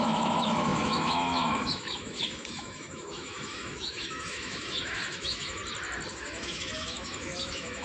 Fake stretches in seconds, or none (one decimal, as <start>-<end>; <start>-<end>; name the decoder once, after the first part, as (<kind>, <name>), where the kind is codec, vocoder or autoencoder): 0.0-5.6 (autoencoder, DAC-VAE); 6.1-7.8